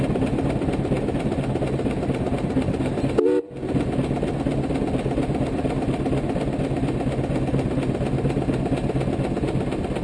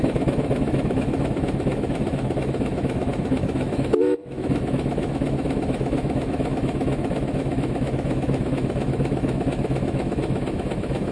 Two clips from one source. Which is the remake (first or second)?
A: second